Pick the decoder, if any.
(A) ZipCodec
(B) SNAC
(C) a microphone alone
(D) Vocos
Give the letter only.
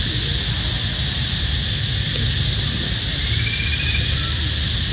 C